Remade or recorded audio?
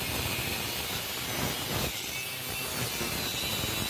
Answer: recorded